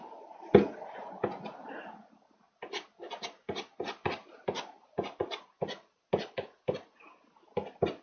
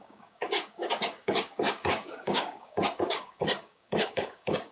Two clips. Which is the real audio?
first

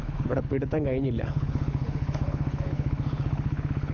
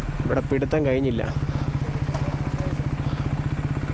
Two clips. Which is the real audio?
second